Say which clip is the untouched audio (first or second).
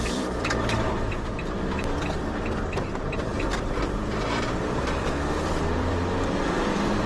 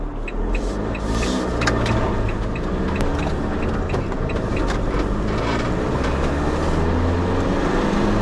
second